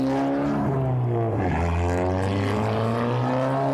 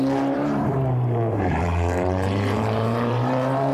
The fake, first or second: second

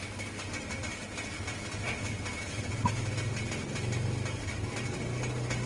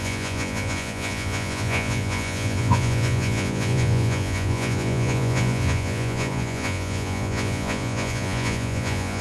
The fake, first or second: second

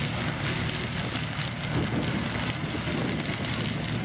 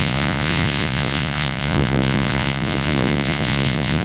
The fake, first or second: second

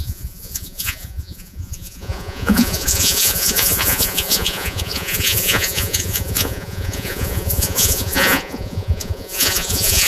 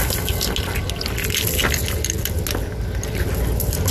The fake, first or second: first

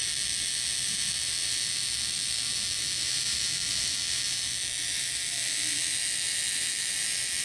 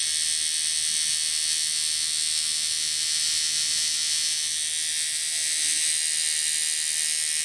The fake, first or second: first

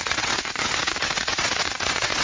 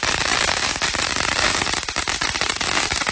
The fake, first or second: first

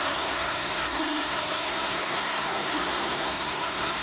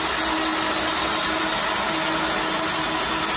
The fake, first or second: first